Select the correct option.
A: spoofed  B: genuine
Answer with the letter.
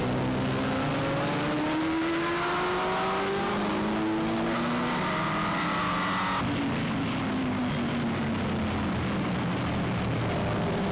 B